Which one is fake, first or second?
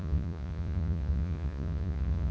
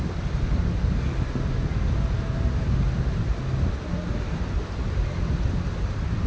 first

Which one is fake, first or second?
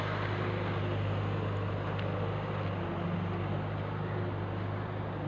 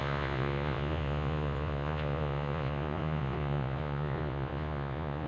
second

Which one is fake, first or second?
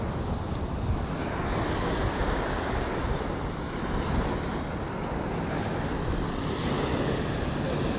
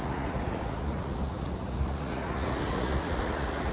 second